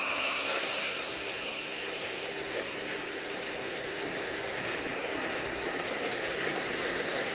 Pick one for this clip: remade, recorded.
remade